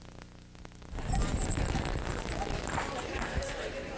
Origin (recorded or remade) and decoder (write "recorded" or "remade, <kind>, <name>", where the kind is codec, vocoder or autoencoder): recorded